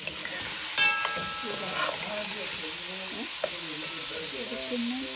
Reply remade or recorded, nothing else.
recorded